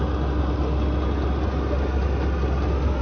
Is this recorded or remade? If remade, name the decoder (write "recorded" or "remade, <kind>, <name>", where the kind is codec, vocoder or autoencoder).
recorded